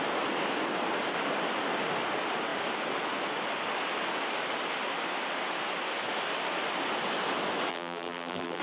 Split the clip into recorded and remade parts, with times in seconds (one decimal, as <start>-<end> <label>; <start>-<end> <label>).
0.0-7.7 recorded; 7.7-8.6 remade